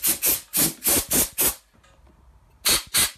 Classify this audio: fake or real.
real